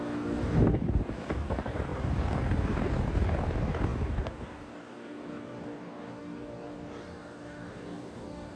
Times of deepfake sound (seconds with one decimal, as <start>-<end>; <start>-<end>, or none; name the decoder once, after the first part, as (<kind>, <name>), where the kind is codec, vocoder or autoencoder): 0.0-8.6 (codec, DAC)